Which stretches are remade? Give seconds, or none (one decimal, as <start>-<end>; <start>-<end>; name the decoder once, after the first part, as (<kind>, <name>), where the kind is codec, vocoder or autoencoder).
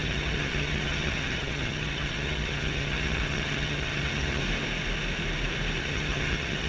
0.0-4.4 (vocoder, HiFi-GAN); 5.8-6.7